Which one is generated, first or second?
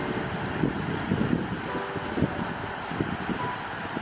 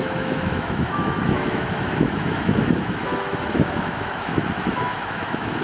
second